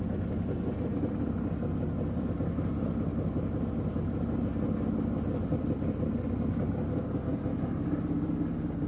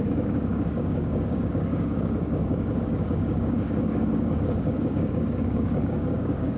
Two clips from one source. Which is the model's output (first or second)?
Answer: second